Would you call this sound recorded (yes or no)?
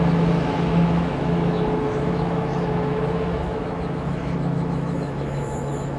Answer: no